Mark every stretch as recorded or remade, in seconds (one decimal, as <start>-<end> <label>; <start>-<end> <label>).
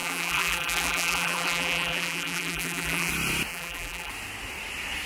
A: 0.0-3.1 remade; 3.1-3.5 recorded; 3.5-4.1 remade; 4.1-5.1 recorded